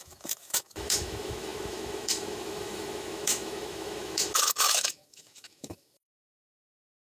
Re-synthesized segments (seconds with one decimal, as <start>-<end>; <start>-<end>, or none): 0.0-7.1